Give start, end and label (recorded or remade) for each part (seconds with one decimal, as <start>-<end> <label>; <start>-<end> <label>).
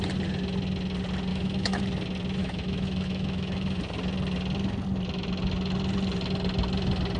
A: 0.0-1.3 recorded; 1.3-1.8 remade; 1.8-2.4 recorded; 2.4-3.8 remade; 3.8-7.2 recorded